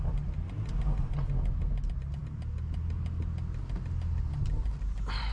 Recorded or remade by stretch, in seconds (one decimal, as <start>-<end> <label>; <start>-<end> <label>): 0.0-5.3 recorded